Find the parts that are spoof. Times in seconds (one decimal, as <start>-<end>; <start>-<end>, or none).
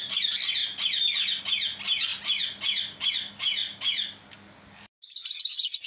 none